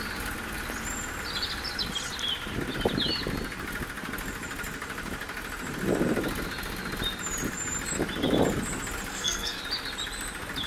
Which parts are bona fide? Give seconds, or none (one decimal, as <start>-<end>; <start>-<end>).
0.0-9.1; 9.6-10.7